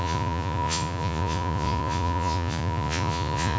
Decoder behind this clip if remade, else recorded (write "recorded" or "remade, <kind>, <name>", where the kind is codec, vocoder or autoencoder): remade, vocoder, Vocos